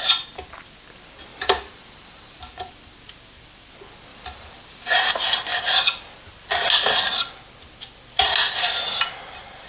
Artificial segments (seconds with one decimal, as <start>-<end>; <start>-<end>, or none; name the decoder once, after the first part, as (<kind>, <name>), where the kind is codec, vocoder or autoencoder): 1.3-2.7 (vocoder, BigVGAN v2); 4.1-5.1